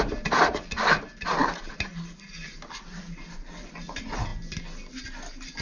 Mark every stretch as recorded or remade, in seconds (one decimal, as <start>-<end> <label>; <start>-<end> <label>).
0.0-5.6 recorded